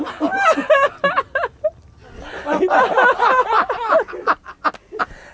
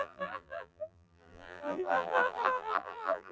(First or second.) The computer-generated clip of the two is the second